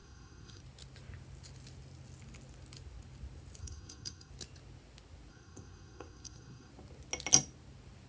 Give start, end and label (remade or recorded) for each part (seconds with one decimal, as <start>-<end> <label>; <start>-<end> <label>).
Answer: 0.0-0.6 remade; 0.6-3.6 recorded; 3.6-4.3 remade; 4.3-5.3 recorded; 5.3-6.7 remade; 6.7-8.1 recorded